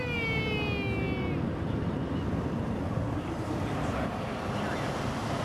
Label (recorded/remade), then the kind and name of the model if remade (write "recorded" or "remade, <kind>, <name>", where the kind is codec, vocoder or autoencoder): recorded